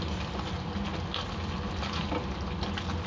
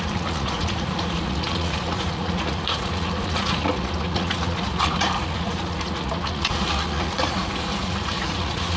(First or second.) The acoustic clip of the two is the first